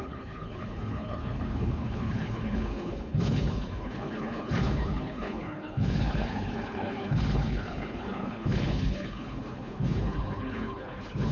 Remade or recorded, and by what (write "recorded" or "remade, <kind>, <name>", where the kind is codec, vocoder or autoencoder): remade, codec, HILCodec